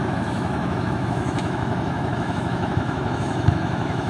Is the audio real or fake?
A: fake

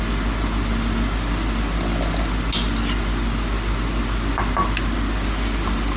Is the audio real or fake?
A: real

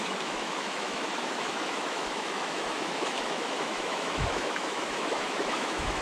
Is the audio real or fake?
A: fake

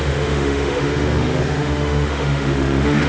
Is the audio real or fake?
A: fake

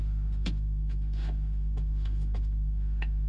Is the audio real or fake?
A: fake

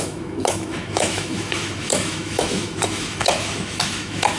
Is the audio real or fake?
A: fake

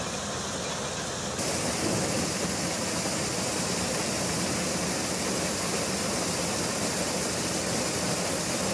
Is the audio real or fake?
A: real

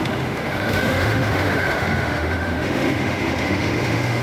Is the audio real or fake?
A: fake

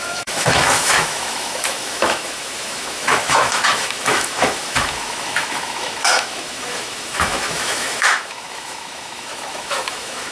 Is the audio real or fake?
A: fake